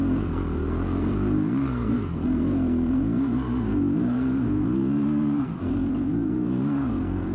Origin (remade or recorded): remade